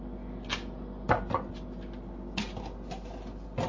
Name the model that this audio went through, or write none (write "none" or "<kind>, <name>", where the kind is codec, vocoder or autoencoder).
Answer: none